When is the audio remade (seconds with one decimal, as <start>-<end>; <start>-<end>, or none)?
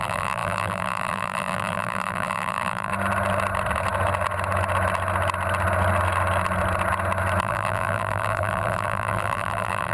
0.0-2.9; 7.4-9.9